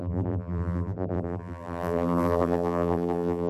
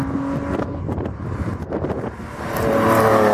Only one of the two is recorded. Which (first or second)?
second